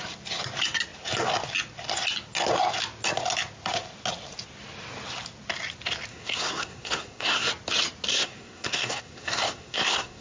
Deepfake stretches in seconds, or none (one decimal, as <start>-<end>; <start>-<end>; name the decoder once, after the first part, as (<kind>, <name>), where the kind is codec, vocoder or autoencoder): 6.1-7.5 (codec, SNAC); 8.1-10.2